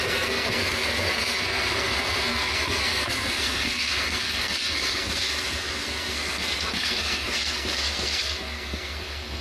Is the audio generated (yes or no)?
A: yes